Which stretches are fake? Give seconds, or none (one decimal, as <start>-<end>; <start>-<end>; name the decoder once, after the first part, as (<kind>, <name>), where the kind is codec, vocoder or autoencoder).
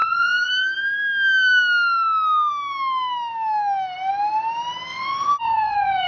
0.0-0.5 (vocoder, Vocos); 4.9-6.1